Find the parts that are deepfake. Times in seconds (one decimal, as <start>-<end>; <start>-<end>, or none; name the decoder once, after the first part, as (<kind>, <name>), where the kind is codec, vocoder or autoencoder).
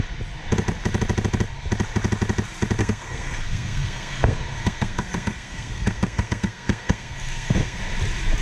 2.8-7.8 (codec, SNAC)